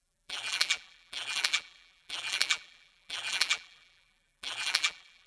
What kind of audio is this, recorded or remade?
remade